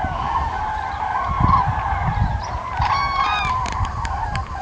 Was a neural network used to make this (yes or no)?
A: yes